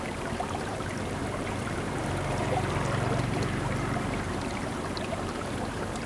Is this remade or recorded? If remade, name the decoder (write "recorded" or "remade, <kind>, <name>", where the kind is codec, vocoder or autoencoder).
remade, vocoder, BigVGAN v2